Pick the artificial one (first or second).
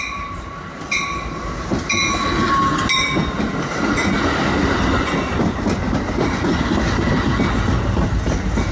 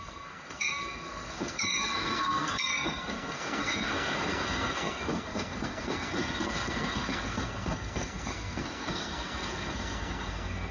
second